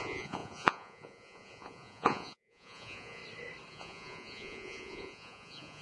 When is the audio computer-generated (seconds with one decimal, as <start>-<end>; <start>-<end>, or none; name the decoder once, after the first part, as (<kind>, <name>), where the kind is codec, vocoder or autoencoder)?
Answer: 0.0-3.2 (vocoder, Vocos); 3.7-5.8

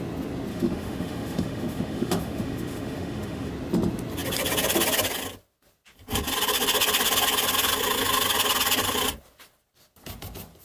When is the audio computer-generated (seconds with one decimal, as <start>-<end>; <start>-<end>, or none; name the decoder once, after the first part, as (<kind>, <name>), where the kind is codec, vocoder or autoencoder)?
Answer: 0.5-3.5 (autoencoder, DAC-VAE)

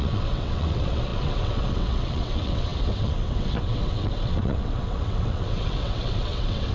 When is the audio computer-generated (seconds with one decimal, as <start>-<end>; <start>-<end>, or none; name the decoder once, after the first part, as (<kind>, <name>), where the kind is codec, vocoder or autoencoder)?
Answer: 0.0-6.7 (vocoder, WaveNeXt)

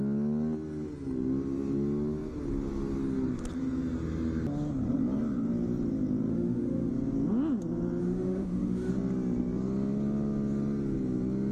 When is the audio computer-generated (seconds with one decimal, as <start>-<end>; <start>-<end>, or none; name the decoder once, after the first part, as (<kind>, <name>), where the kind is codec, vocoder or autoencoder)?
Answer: 6.3-6.9 (autoencoder, DAC-VAE); 8.0-8.9

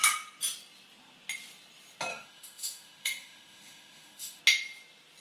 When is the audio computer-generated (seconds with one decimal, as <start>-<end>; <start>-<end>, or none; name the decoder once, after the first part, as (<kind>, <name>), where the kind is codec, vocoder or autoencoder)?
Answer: 2.1-4.4 (autoencoder, DAC-VAE)

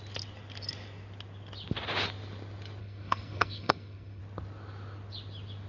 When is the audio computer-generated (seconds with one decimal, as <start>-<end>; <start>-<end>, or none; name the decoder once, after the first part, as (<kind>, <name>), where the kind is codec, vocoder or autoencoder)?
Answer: 2.8-4.2 (codec, SNAC)